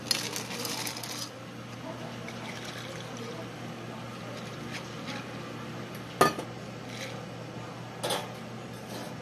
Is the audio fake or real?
real